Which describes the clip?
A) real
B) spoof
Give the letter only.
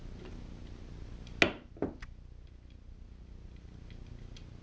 A